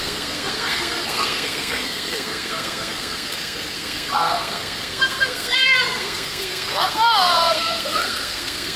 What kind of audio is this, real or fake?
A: fake